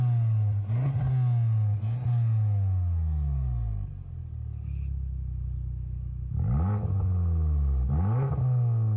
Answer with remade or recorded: recorded